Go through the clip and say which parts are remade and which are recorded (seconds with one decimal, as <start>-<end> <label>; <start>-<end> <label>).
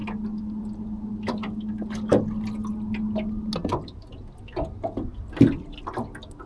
0.0-6.5 recorded